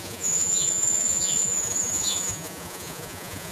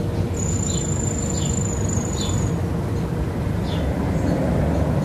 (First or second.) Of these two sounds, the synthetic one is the first